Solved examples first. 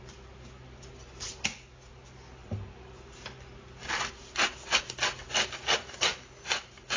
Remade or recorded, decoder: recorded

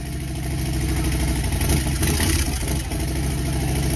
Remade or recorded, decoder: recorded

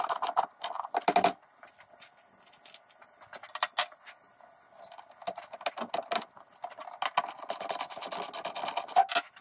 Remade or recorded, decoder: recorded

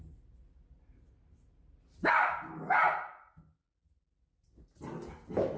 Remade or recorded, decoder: recorded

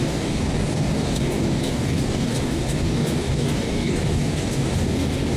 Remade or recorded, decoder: remade, codec, DAC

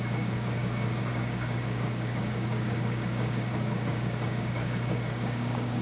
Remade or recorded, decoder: remade, codec, DAC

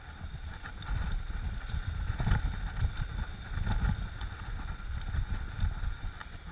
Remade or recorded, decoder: recorded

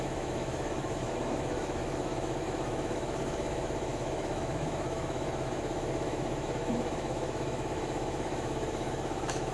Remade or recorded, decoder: remade, autoencoder, DAC-VAE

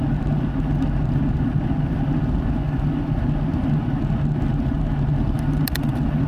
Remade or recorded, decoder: recorded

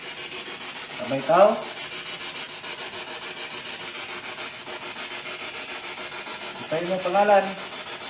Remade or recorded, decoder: recorded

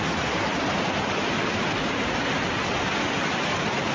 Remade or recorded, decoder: recorded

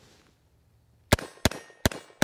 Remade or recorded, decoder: recorded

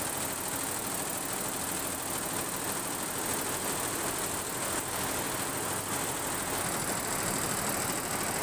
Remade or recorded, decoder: recorded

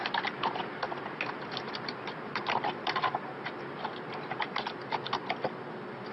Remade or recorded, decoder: recorded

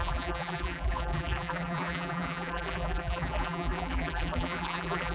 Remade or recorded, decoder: remade, vocoder, BigVGAN v2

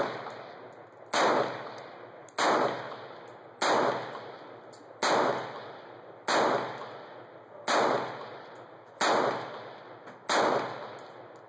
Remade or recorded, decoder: recorded